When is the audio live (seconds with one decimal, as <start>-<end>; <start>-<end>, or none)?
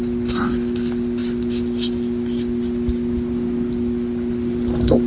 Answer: 0.0-5.1